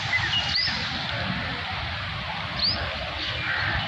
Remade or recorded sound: recorded